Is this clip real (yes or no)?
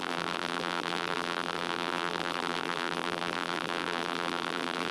no